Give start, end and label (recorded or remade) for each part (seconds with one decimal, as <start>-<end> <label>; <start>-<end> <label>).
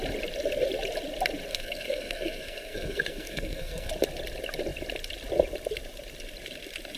0.0-1.5 recorded; 1.5-3.9 remade; 3.9-7.0 recorded